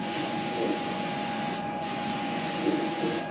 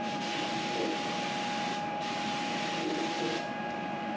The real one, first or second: second